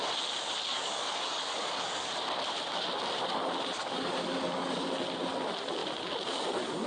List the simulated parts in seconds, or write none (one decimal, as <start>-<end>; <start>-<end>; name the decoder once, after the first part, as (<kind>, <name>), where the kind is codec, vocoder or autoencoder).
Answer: 0.7-2.1 (codec, DAC); 3.8-4.9